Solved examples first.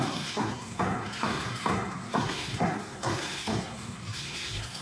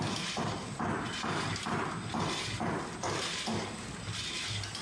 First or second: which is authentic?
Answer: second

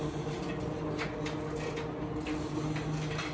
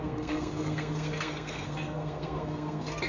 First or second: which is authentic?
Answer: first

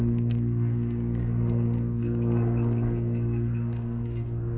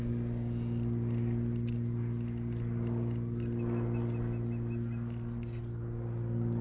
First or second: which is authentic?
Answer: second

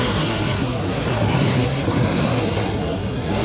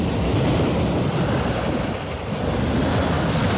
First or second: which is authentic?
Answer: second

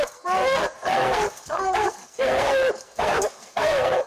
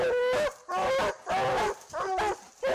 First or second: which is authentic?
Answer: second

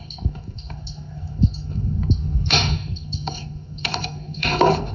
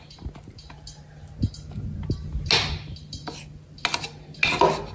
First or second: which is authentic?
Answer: second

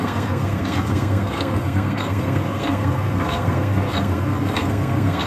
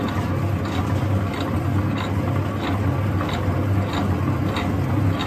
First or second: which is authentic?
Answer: second